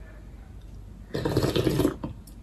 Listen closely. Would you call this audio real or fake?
real